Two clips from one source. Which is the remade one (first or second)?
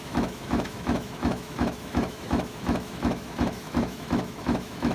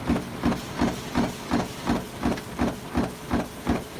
first